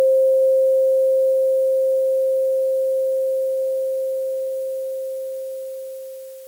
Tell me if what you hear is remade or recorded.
recorded